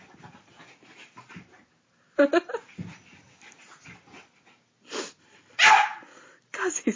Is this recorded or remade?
recorded